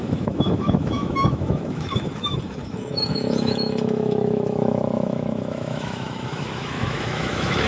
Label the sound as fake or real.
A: fake